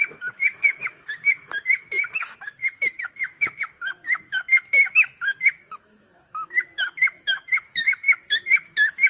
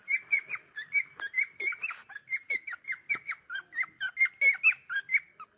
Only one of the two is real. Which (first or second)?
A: second